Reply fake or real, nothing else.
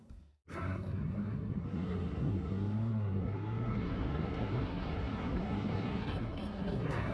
fake